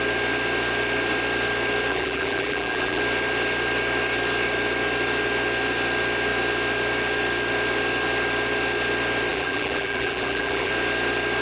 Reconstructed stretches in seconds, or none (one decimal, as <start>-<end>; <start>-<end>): 1.9-3.0; 9.3-10.7